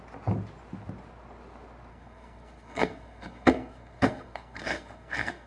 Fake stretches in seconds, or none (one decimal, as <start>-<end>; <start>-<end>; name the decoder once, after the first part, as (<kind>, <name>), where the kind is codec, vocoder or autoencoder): 1.9-5.5 (codec, SNAC)